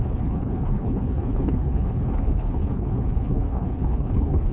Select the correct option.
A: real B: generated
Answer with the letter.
B